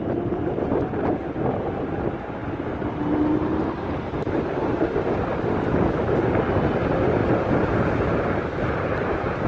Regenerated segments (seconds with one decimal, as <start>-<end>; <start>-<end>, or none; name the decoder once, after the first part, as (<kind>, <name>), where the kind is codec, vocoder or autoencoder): none